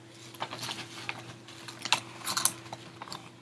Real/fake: real